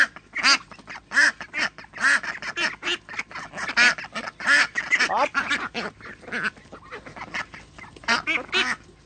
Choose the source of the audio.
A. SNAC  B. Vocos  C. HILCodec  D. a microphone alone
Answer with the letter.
D